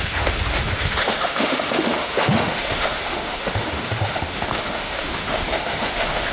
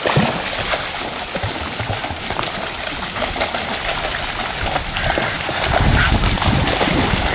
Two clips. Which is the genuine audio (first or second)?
second